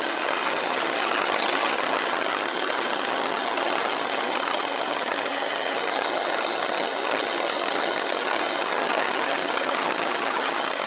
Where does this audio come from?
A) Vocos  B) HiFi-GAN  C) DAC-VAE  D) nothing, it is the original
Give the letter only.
B